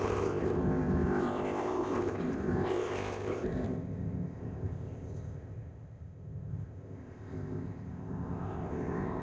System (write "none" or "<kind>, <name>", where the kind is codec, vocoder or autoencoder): codec, ZipCodec